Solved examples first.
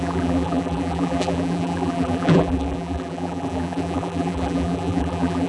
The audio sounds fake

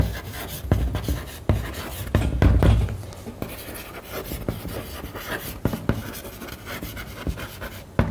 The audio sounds real